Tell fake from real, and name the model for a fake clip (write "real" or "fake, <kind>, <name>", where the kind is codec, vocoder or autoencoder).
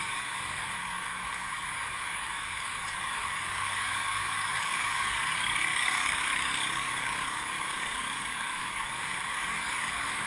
fake, codec, DAC